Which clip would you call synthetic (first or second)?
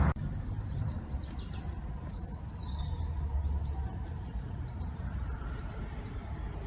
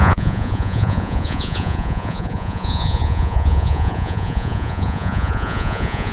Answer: second